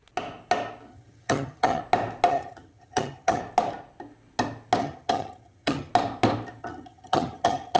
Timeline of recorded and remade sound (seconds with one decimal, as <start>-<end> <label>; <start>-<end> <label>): 0.0-0.9 recorded; 0.9-1.8 remade; 1.8-2.3 recorded; 2.3-3.4 remade; 3.4-4.8 recorded; 4.8-5.9 remade; 5.9-6.6 recorded; 6.6-7.8 remade

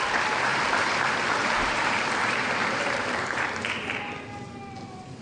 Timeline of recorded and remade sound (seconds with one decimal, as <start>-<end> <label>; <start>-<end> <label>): 0.0-0.5 recorded; 0.5-3.6 remade; 3.6-5.2 recorded

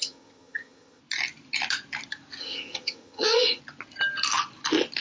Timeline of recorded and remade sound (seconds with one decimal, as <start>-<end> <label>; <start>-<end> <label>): 0.0-1.0 remade; 1.0-2.4 recorded; 2.4-3.6 remade; 3.6-5.0 recorded

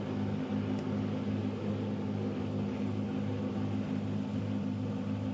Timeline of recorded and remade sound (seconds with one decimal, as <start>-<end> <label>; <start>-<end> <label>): 0.0-5.3 recorded

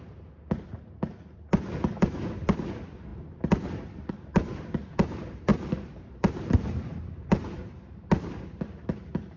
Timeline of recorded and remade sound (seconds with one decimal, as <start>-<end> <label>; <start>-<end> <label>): 0.0-5.5 recorded; 5.5-8.1 remade; 8.1-9.4 recorded

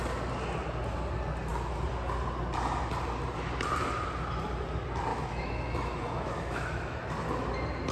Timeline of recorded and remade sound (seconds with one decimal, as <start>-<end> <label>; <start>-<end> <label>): 0.0-5.1 recorded; 5.1-7.1 remade; 7.1-7.9 recorded

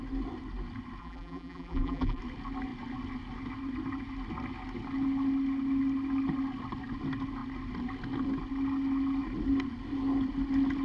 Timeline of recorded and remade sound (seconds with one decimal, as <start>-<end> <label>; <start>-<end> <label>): 0.0-1.0 recorded; 1.0-2.2 remade; 2.2-10.8 recorded

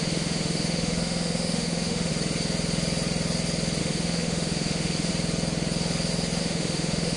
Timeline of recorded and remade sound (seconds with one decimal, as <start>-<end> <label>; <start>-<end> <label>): 0.0-2.1 remade; 2.1-3.8 recorded; 3.8-5.1 remade; 5.1-6.4 recorded; 6.4-7.2 remade